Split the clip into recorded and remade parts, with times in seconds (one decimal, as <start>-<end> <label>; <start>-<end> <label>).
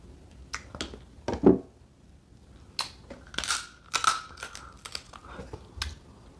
0.0-6.4 recorded